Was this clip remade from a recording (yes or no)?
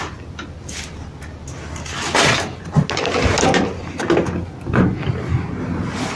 no